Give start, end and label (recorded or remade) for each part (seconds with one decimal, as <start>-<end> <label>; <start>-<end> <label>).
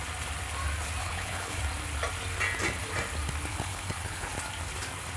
0.0-1.0 recorded; 1.0-1.6 remade; 1.6-3.5 recorded; 3.5-4.3 remade; 4.3-5.2 recorded